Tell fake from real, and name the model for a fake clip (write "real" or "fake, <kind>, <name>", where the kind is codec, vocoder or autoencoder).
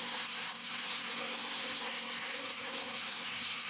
fake, codec, SNAC